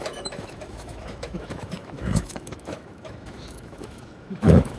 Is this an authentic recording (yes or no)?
no